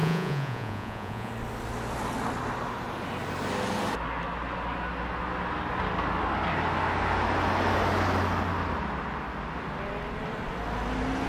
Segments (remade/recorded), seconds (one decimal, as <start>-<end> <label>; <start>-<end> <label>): 0.0-1.3 remade; 1.3-11.3 recorded